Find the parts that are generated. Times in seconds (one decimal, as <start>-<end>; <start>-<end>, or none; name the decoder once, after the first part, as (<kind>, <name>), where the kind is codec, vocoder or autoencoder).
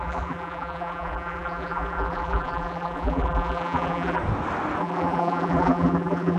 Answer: 0.0-4.2 (vocoder, BigVGAN v2); 4.8-6.4